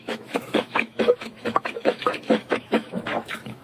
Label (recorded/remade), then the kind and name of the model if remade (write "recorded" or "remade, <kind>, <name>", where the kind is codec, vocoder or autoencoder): remade, autoencoder, DAC-VAE